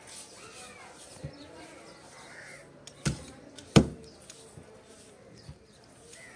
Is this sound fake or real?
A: real